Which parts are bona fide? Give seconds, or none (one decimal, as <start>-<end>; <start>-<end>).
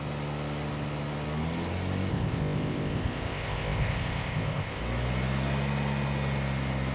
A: 0.0-2.1; 4.8-6.9